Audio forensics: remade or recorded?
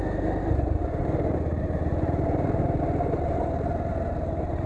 recorded